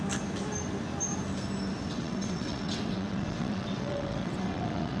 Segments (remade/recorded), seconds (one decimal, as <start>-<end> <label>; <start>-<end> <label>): 0.0-1.9 recorded; 1.9-5.0 remade

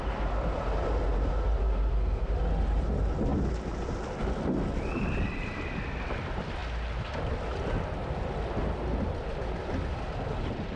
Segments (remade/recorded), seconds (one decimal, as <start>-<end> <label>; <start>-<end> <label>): 0.0-1.6 recorded; 1.6-2.3 remade; 2.3-10.8 recorded

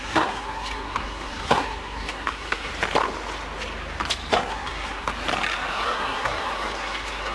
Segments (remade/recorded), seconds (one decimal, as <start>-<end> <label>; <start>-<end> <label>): 0.0-2.7 remade; 2.7-4.3 recorded; 4.3-5.1 remade; 5.1-5.7 recorded; 5.7-7.3 remade

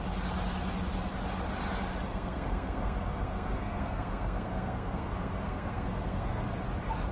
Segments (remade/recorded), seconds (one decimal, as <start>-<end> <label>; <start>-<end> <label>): 0.0-2.1 recorded; 2.1-6.4 remade; 6.4-7.1 recorded

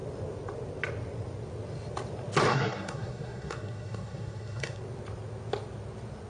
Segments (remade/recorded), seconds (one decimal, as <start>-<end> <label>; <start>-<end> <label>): 0.0-2.5 recorded; 2.5-4.8 remade; 4.8-6.3 recorded